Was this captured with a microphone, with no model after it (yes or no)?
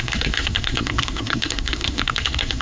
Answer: no